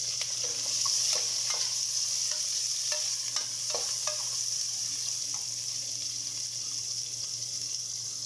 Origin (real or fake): real